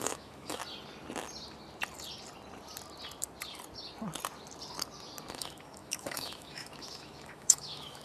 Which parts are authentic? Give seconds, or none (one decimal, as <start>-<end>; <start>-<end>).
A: 0.6-5.3